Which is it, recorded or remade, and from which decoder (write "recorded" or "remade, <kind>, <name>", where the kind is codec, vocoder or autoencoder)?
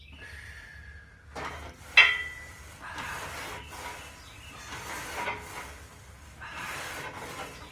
recorded